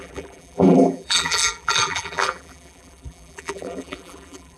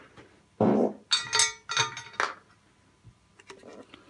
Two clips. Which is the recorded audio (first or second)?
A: second